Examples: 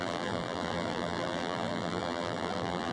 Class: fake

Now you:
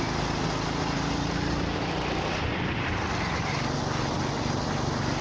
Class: real